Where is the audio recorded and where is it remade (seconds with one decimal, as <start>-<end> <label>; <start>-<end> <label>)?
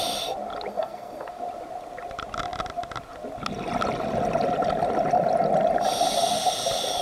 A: 0.0-0.7 recorded; 0.7-1.3 remade; 1.3-7.0 recorded